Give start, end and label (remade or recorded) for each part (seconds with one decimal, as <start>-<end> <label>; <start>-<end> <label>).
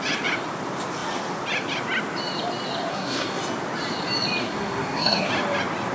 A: 0.0-2.9 recorded; 2.9-3.4 remade; 3.4-4.4 recorded; 4.4-5.3 remade; 5.3-5.9 recorded